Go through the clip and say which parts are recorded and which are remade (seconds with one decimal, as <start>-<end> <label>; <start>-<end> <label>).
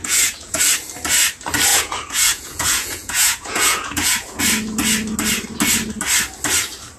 0.0-0.6 remade; 0.6-1.7 recorded; 1.7-4.4 remade; 4.4-7.0 recorded